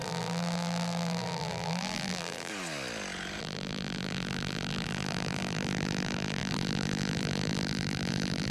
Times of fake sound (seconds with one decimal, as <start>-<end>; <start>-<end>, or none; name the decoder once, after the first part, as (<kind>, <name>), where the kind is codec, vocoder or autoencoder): 0.0-2.5 (vocoder, BigVGAN v2); 3.4-8.5